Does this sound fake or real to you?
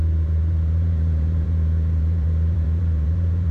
fake